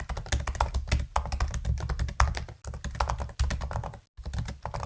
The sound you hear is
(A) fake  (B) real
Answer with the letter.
B